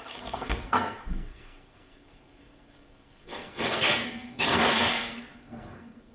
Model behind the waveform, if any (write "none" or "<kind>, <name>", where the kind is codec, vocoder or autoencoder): codec, SNAC